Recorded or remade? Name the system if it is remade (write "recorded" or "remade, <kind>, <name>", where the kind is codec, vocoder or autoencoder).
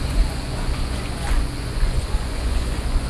remade, vocoder, Vocos